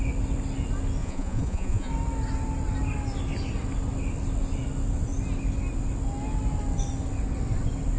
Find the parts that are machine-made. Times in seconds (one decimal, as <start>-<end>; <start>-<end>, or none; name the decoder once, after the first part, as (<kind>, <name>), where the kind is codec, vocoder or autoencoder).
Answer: 1.0-1.9 (vocoder, Vocos)